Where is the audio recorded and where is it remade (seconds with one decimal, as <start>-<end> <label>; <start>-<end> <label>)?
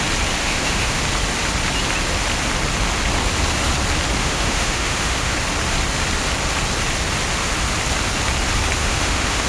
0.0-0.4 recorded; 0.4-1.0 remade; 1.0-4.2 recorded; 4.2-5.3 remade; 5.3-8.8 recorded; 8.8-9.5 remade